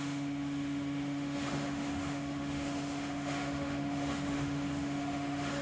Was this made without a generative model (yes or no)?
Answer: no